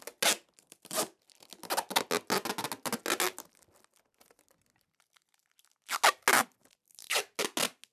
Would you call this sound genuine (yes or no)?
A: yes